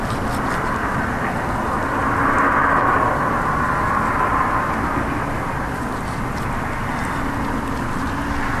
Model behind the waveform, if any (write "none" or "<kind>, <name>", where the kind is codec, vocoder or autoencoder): none